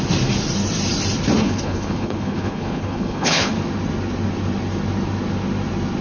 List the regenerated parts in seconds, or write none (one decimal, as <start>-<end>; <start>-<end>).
1.4-3.5